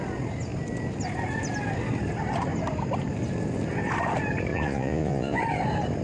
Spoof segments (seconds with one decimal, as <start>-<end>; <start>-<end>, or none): 4.5-5.4